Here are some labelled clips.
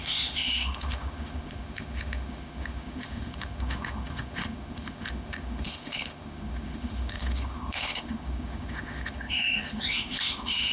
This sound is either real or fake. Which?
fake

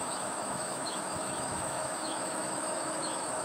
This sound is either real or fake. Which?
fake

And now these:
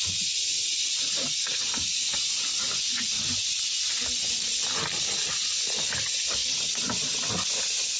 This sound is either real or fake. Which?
real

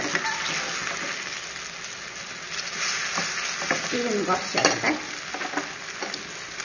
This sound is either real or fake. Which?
real